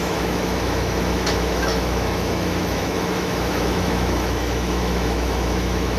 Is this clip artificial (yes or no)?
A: yes